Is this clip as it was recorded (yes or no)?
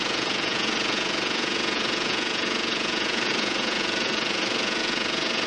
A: no